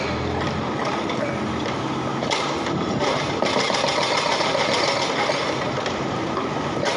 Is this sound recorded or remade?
remade